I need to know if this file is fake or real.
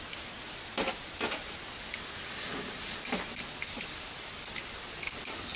real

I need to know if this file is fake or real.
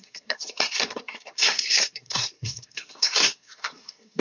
fake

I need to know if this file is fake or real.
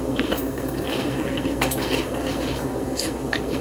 fake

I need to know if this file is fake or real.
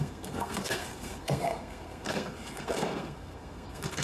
fake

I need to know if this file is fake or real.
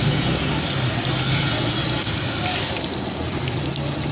real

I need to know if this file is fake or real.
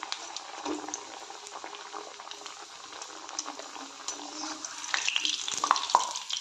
real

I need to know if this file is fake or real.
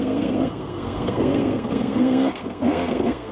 fake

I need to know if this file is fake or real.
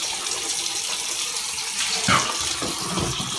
real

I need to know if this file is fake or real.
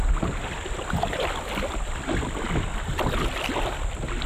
real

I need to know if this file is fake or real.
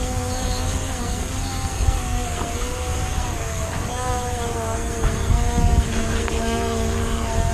fake